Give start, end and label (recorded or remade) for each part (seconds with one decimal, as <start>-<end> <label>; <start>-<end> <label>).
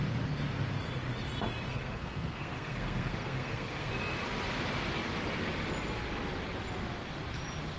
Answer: 0.0-1.7 recorded; 1.7-3.9 remade; 3.9-7.8 recorded